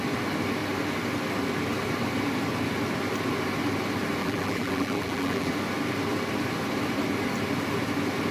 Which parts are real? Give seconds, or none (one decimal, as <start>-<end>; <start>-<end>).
0.0-4.2; 5.5-8.3